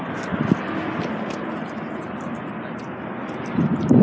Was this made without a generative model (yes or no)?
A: yes